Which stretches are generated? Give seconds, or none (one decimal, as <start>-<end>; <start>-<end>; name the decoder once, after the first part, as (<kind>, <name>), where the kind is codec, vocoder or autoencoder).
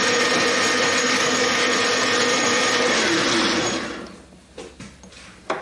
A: 1.0-1.6 (codec, DAC)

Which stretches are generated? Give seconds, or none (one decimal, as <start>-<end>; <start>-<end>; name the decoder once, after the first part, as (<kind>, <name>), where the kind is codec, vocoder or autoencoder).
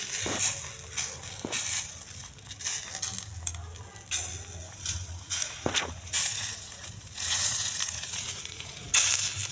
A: 4.6-8.9 (vocoder, Vocos)